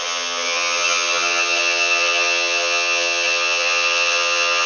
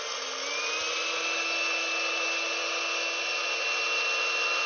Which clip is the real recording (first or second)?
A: second